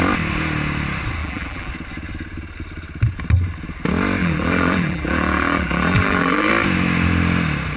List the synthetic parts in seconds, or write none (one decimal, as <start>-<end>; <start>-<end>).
1.2-1.7; 4.2-6.5